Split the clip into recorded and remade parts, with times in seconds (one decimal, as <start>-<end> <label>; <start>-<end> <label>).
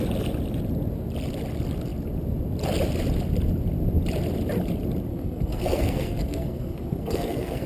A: 0.0-5.1 recorded; 5.1-7.7 remade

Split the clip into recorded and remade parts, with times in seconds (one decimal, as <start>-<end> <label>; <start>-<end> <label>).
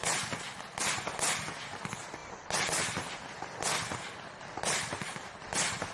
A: 0.0-5.9 recorded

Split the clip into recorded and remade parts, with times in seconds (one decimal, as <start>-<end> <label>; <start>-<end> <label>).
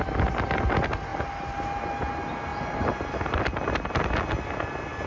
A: 0.0-5.1 recorded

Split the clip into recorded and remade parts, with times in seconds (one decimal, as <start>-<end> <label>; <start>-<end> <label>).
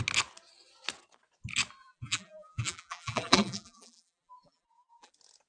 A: 0.0-1.8 recorded; 1.8-5.1 remade; 5.1-5.5 recorded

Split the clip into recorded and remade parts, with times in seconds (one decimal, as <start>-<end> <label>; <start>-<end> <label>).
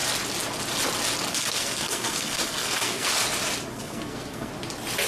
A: 0.0-1.3 recorded; 1.3-3.1 remade; 3.1-3.7 recorded; 3.7-4.5 remade; 4.5-5.1 recorded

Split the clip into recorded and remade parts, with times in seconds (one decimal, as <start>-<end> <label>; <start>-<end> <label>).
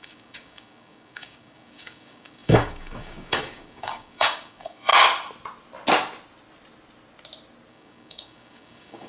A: 0.0-4.9 remade; 4.9-7.7 recorded; 7.7-9.1 remade